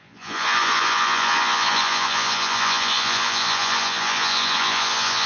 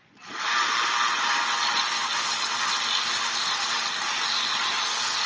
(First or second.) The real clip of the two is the second